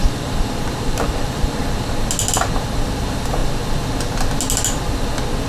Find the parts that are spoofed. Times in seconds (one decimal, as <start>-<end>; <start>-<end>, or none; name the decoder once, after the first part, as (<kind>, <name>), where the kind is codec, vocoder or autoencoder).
0.0-1.6 (vocoder, BigVGAN v2)